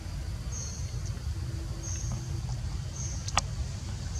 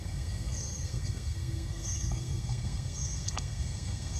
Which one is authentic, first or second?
first